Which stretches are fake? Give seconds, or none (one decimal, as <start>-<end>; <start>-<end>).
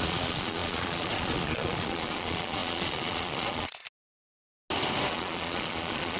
0.0-3.8; 5.1-6.2